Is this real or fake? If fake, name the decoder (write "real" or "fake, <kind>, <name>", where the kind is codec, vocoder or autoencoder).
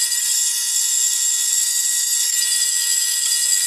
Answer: fake, vocoder, Vocos